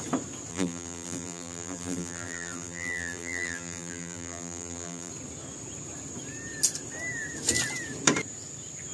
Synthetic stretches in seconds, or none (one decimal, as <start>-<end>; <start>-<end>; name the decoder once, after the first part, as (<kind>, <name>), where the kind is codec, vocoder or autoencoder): 0.5-5.1 (vocoder, BigVGAN v2)